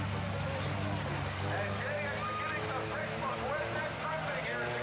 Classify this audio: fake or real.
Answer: real